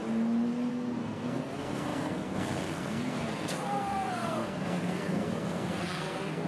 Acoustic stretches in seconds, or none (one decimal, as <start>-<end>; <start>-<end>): 0.0-0.7